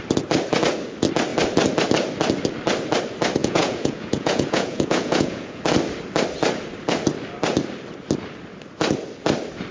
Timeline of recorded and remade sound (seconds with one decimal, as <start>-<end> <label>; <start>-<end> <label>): 0.0-3.4 recorded; 3.4-5.6 remade; 5.6-9.7 recorded